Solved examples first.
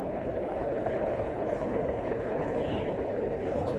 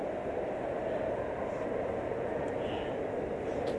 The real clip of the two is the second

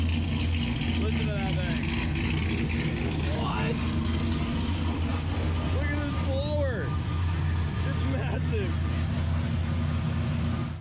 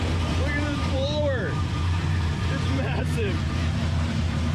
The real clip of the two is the first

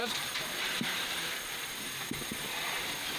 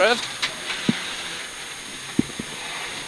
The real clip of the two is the second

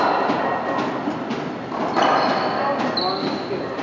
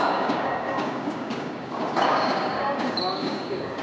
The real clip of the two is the first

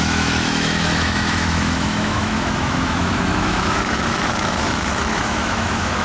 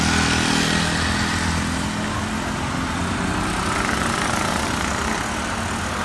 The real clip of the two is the second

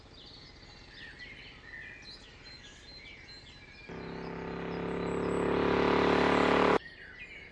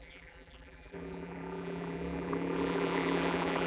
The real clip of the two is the first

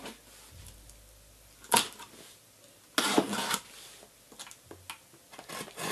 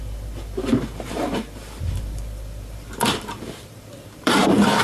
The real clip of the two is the first